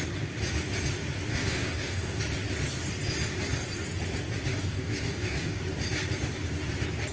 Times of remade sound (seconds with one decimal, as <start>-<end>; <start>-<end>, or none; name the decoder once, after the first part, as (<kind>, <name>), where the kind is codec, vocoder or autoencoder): 1.3-2.2 (codec, DAC); 4.5-5.6